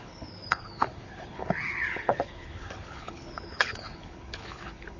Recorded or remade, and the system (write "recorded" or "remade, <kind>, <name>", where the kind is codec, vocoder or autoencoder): remade, codec, HILCodec